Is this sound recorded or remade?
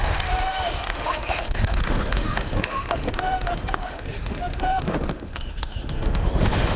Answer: remade